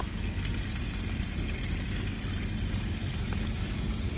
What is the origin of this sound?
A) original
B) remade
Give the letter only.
A